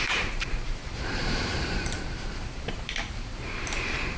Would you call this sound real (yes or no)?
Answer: no